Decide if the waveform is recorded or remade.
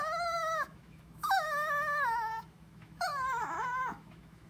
remade